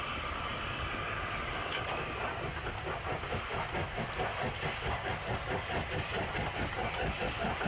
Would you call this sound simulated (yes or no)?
no